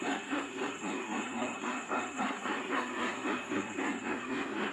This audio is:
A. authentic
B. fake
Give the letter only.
B